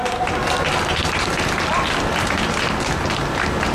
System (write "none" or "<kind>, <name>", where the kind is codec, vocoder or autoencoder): none